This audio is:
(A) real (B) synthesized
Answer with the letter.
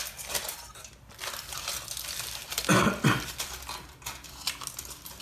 A